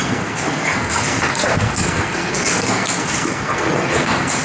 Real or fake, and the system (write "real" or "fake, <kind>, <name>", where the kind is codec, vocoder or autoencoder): fake, codec, SNAC